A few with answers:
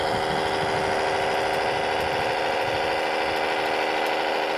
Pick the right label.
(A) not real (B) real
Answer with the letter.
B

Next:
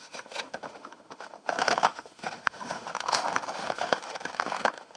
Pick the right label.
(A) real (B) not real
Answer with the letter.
B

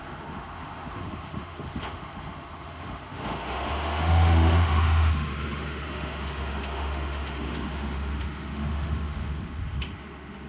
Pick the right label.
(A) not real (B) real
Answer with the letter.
A